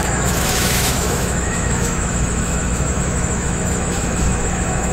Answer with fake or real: fake